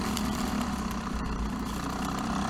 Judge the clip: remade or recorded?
recorded